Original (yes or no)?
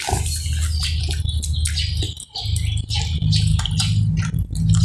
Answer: yes